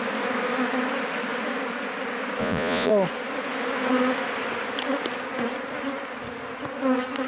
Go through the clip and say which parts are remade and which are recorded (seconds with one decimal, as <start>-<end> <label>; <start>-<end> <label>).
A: 0.0-2.4 recorded; 2.4-2.9 remade; 2.9-7.3 recorded